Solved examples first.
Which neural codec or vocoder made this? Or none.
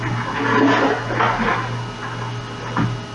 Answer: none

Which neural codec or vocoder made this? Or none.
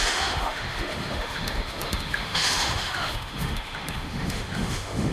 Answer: autoencoder, DAC-VAE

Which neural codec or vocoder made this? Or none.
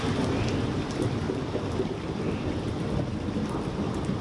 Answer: none